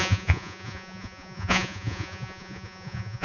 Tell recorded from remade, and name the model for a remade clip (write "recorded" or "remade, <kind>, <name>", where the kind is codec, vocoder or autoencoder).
remade, vocoder, Vocos